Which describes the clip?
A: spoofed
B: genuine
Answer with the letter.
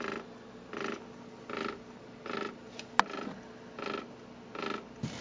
B